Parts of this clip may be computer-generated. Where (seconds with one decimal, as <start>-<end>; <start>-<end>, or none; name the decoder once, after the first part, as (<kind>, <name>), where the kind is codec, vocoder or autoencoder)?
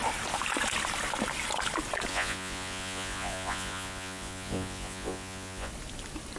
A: 2.1-5.7 (vocoder, Vocos)